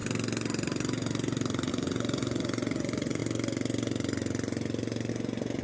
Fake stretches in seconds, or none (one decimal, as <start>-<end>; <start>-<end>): 1.7-3.2; 5.1-5.6